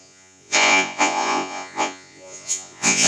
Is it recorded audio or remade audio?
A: remade